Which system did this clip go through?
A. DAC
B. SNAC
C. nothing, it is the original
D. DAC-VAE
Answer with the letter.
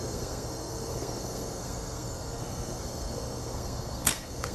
B